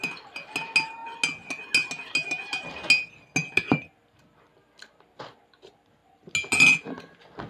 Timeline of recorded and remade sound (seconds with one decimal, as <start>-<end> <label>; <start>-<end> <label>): 0.0-7.5 recorded